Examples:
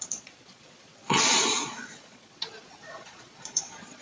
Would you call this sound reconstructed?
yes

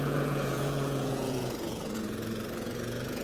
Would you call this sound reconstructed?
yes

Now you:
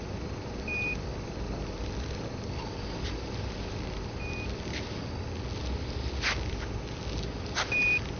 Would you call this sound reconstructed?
no